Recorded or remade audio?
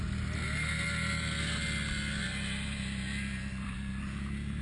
recorded